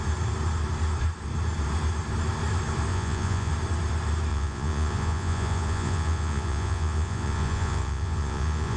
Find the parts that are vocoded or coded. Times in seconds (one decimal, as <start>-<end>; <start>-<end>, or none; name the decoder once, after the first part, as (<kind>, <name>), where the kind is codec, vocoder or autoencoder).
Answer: 2.9-3.5 (vocoder, Vocos); 4.3-8.8